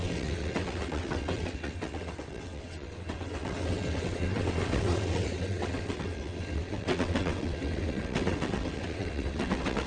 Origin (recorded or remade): remade